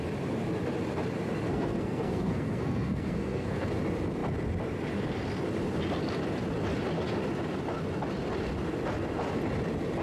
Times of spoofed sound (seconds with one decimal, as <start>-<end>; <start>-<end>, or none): 1.5-3.7